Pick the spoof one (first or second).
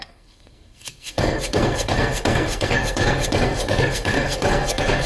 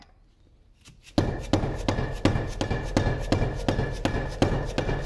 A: first